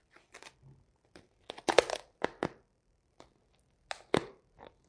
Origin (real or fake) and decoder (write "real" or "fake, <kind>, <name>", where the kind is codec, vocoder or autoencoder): real